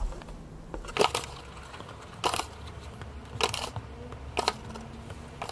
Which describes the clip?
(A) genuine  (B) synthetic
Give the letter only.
A